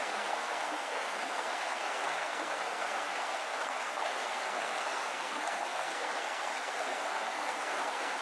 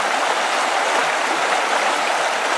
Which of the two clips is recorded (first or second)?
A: second